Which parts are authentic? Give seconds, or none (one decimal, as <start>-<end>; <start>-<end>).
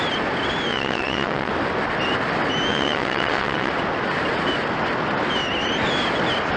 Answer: 0.0-0.7; 1.5-2.7; 3.7-6.6